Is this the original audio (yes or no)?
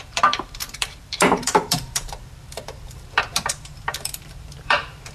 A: no